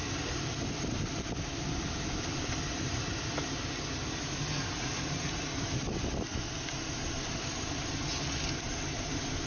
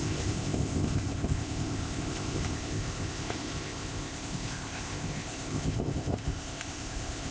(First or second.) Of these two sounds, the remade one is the second